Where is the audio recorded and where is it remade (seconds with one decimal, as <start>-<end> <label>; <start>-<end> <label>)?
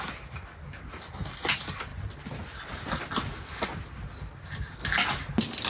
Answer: 0.0-5.7 recorded